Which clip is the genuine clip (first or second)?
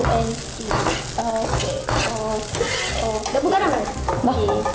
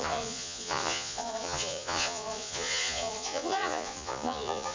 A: first